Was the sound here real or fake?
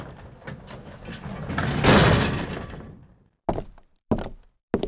real